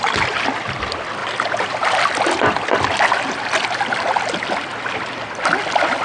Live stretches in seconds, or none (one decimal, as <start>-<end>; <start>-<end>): 0.0-6.0

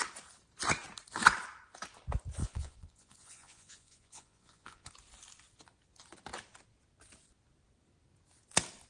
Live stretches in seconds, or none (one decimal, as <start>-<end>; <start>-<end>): 0.0-2.4; 4.9-8.9

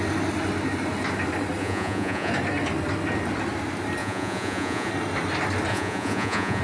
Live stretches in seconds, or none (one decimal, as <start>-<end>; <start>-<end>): 0.0-1.6; 2.3-4.0; 4.9-5.7

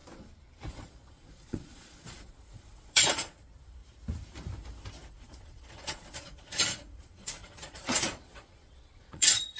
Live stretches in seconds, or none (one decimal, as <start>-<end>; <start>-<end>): 0.0-0.7; 3.8-5.1